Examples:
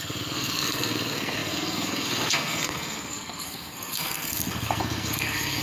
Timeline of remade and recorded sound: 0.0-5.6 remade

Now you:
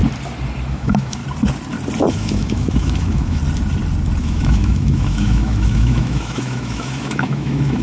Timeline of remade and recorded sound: 0.0-0.7 recorded; 0.7-1.2 remade; 1.2-2.1 recorded; 2.1-3.4 remade; 3.4-4.2 recorded; 4.2-7.8 remade

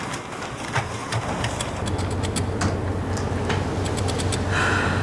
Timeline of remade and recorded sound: 0.0-5.0 recorded

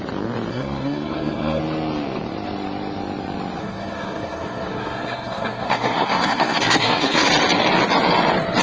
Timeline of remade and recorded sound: 0.0-0.5 recorded; 0.5-1.6 remade; 1.6-3.6 recorded; 3.6-7.3 remade; 7.3-8.6 recorded

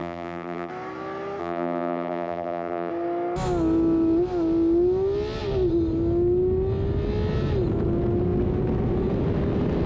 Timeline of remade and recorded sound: 0.0-0.7 remade; 0.7-1.4 recorded; 1.4-2.9 remade; 2.9-9.9 recorded

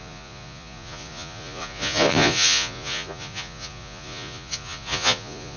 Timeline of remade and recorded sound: 0.0-5.6 remade

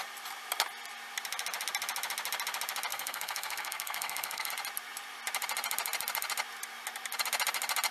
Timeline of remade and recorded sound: 0.0-2.9 recorded; 2.9-4.5 remade; 4.5-7.9 recorded